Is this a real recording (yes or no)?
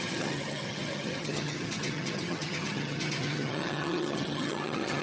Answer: no